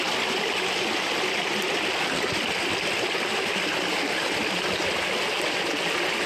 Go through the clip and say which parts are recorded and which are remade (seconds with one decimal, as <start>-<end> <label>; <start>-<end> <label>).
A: 0.0-6.3 recorded